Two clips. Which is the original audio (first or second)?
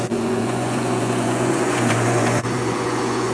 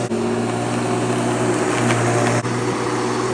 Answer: second